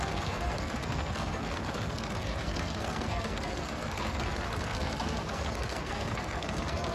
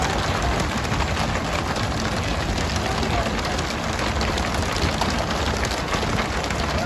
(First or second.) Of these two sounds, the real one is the second